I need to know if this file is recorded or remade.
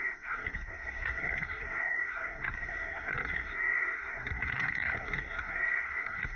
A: remade